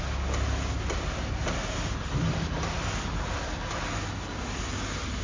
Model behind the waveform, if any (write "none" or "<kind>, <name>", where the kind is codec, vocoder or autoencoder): none